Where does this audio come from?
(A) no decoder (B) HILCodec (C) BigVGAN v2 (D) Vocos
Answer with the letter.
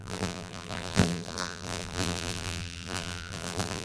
C